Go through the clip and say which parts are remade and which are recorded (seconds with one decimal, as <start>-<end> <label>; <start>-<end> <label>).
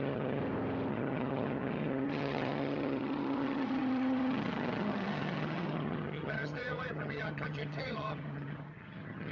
0.0-0.4 remade; 0.4-0.9 recorded; 0.9-9.3 remade